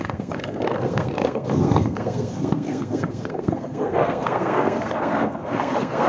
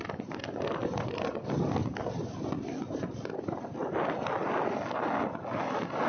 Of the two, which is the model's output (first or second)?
first